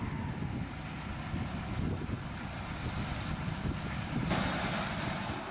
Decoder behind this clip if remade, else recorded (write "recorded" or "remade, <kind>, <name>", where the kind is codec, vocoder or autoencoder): recorded